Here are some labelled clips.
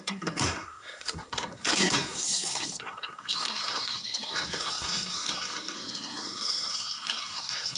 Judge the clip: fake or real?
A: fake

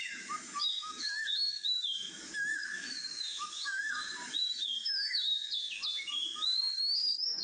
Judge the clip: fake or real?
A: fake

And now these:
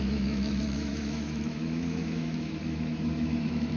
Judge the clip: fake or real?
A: fake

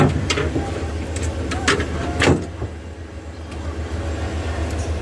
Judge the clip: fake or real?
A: real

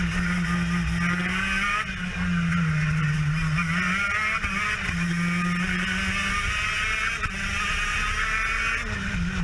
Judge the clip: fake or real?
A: real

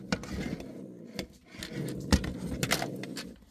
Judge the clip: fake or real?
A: real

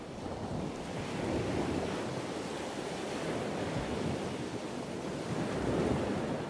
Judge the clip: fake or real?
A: real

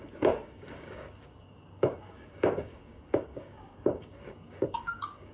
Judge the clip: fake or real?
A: fake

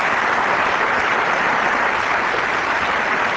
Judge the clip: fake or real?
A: fake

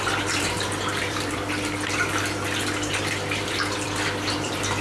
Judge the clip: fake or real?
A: fake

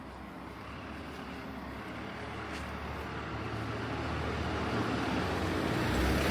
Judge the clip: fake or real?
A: real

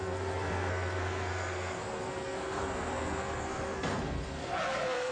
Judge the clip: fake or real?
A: fake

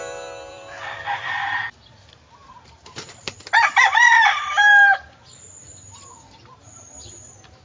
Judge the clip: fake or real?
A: fake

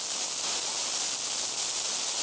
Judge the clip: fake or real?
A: real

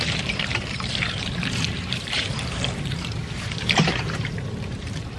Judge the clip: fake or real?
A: fake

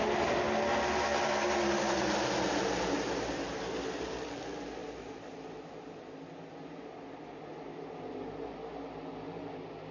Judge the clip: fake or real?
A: real